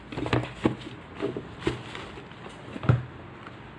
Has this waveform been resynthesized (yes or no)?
no